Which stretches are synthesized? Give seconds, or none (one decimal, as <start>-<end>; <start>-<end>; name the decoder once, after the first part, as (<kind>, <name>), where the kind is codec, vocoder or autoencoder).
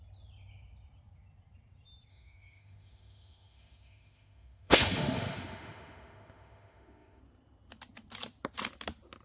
2.1-7.2 (autoencoder, DAC-VAE)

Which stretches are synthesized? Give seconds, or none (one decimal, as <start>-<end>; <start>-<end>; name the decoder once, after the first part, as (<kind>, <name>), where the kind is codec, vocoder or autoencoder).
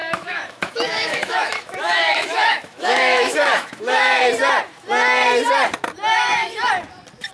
0.0-4.2 (autoencoder, DAC-VAE); 6.1-6.7